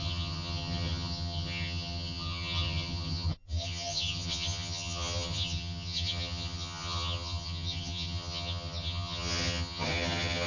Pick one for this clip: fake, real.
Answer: fake